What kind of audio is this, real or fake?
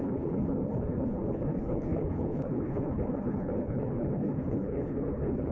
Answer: fake